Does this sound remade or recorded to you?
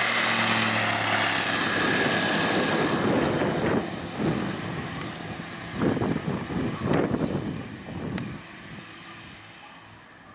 recorded